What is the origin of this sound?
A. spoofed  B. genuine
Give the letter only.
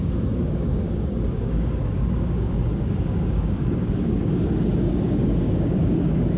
A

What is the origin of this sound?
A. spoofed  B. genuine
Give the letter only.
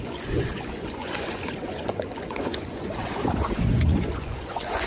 A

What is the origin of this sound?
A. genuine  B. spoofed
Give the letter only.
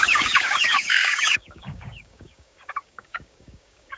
B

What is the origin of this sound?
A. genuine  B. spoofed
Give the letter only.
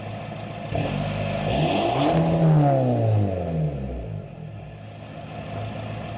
A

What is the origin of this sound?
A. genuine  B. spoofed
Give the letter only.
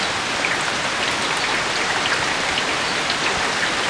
A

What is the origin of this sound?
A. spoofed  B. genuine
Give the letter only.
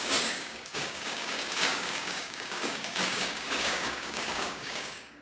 A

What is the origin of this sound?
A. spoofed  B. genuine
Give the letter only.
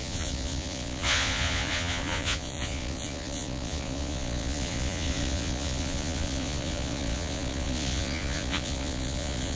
A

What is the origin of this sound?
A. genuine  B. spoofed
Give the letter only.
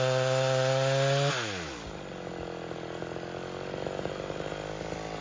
A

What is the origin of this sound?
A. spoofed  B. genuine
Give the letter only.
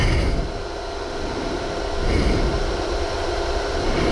B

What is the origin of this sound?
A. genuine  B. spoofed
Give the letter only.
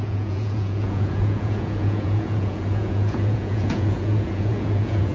B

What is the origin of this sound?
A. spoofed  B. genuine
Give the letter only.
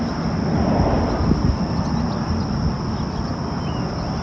B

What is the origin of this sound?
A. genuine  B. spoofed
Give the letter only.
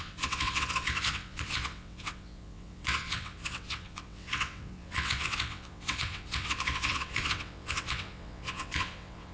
B